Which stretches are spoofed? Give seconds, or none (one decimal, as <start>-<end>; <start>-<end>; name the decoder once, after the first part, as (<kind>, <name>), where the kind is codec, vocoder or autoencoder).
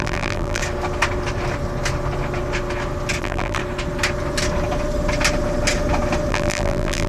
0.0-0.6 (vocoder, BigVGAN v2); 3.2-3.6; 6.3-7.1